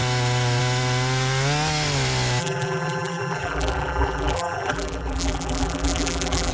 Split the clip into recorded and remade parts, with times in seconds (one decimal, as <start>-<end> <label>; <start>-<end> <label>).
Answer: 0.0-2.4 recorded; 2.4-6.5 remade